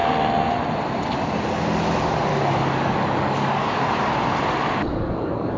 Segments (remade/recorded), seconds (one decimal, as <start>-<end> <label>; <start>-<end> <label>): 0.0-2.3 recorded; 2.3-3.9 remade; 3.9-4.9 recorded; 4.9-5.6 remade